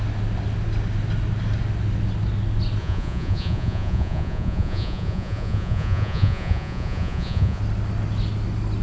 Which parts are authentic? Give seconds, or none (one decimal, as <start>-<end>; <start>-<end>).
0.0-2.8; 7.6-8.8